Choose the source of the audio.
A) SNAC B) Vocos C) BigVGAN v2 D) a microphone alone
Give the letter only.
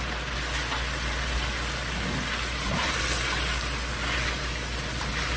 D